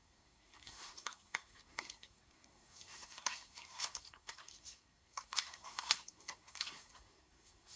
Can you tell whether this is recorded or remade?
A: remade